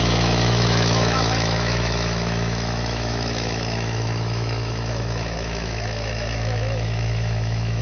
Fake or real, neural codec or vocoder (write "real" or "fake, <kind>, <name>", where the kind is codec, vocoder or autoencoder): fake, autoencoder, DAC-VAE